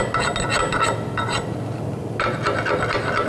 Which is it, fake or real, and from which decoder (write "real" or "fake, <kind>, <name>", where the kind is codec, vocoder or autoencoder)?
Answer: real